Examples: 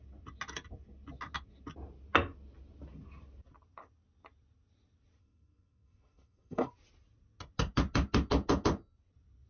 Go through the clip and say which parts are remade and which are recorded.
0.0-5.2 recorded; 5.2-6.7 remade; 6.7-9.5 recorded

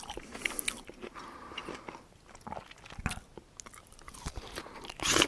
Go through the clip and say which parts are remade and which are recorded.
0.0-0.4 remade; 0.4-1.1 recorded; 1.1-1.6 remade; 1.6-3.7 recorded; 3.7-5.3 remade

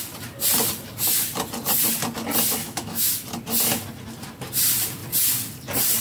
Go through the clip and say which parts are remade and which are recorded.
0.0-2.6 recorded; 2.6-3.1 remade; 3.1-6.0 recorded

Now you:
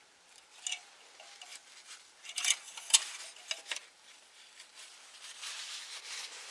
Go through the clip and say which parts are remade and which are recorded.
0.0-1.5 recorded; 1.5-3.2 remade; 3.2-3.8 recorded; 3.8-5.6 remade; 5.6-6.5 recorded

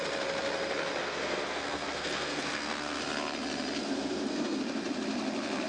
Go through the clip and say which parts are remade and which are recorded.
0.0-1.0 recorded; 1.0-3.0 remade; 3.0-3.8 recorded; 3.8-4.6 remade; 4.6-5.7 recorded